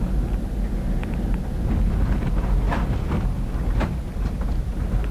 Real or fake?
real